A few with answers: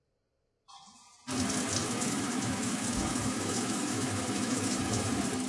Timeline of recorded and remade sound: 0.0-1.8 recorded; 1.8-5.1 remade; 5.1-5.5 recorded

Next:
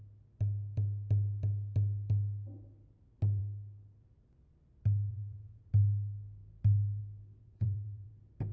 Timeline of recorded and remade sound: 0.0-5.1 recorded; 5.1-5.6 remade; 5.6-7.4 recorded; 7.4-8.1 remade; 8.1-8.5 recorded

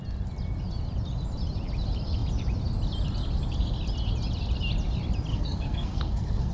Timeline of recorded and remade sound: 0.0-5.3 recorded; 5.3-6.5 remade

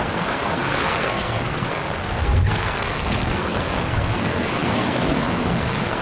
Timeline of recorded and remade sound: 0.0-6.0 remade

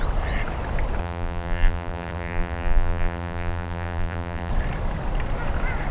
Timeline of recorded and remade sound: 0.0-1.0 recorded; 1.0-4.5 remade; 4.5-5.9 recorded

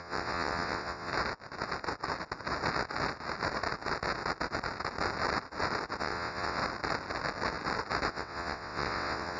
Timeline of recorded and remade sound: 0.0-1.1 remade; 1.1-6.0 recorded; 6.0-6.6 remade; 6.6-8.1 recorded; 8.1-9.4 remade

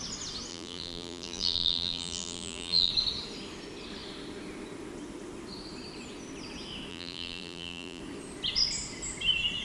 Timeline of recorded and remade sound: 0.0-0.5 recorded; 0.5-2.9 remade; 2.9-6.9 recorded; 6.9-8.0 remade; 8.0-9.6 recorded

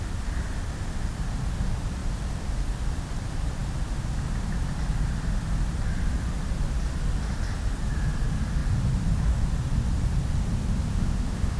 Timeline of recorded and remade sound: 0.0-10.9 recorded; 10.9-11.6 remade